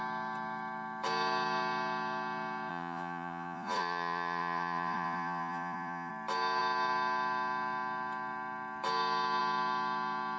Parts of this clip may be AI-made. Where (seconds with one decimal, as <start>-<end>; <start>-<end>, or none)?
2.7-6.1